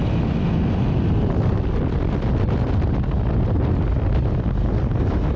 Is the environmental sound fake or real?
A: real